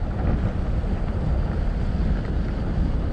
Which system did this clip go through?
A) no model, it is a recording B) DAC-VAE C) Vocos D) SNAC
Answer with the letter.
A